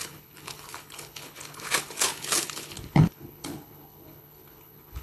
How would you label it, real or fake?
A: fake